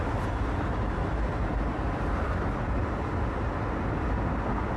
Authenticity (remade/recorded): recorded